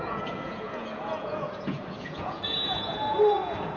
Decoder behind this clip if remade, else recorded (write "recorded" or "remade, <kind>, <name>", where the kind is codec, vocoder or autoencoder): remade, vocoder, Vocos